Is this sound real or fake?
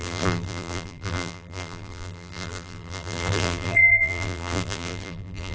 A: fake